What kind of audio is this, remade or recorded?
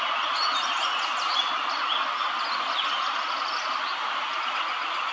recorded